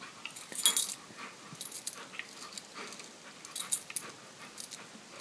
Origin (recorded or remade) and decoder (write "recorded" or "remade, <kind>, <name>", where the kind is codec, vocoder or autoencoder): recorded